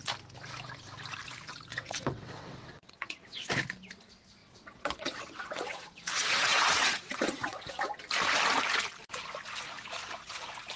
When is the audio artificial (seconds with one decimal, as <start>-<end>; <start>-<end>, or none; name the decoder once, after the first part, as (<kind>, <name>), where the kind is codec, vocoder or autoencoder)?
1.7-3.5 (vocoder, WaveNeXt); 4.4-7.7